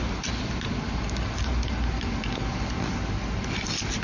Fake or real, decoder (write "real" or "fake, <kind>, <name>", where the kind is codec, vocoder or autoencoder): real